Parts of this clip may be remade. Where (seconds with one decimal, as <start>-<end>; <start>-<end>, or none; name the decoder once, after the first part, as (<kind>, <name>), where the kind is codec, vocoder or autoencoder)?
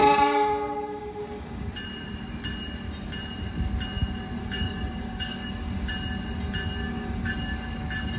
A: 0.0-1.7 (codec, DAC); 4.4-5.9; 6.8-7.3